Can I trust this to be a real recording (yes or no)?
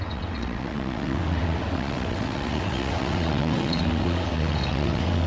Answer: no